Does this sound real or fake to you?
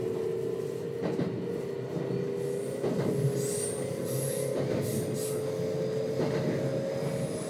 real